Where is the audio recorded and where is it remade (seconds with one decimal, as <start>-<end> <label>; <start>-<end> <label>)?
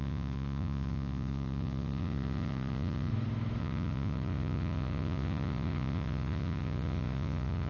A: 0.0-3.1 remade; 3.1-3.6 recorded; 3.6-7.7 remade